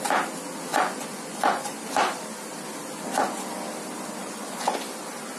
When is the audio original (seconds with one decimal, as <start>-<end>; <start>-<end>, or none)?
0.0-0.7; 1.8-4.2; 4.9-5.4